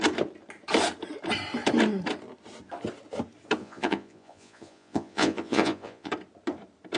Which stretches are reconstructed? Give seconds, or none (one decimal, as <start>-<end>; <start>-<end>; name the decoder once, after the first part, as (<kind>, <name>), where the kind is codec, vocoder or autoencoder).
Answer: 3.6-6.1 (vocoder, Vocos)